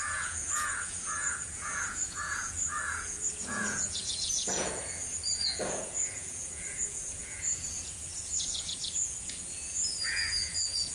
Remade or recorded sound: remade